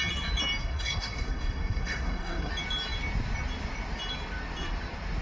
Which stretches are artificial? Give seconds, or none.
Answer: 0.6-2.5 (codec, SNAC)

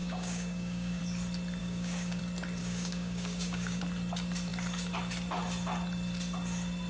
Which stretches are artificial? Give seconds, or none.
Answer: 0.0-1.0 (codec, DAC); 1.6-2.2; 2.6-3.8